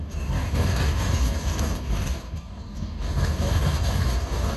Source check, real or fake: fake